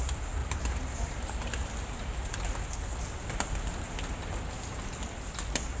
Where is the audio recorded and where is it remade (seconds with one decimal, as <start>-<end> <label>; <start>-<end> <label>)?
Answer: 0.0-0.4 recorded; 0.4-1.5 remade; 1.5-5.8 recorded